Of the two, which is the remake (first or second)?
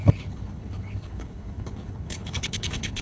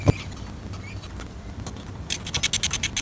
first